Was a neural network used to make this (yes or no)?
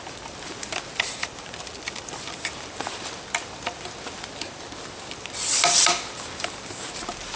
yes